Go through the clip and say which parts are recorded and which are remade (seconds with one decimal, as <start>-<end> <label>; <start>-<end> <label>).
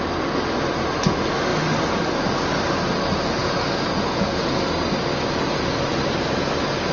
0.0-3.4 recorded; 3.4-4.6 remade; 4.6-6.9 recorded